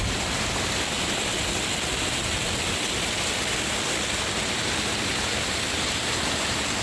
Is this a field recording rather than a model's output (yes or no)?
yes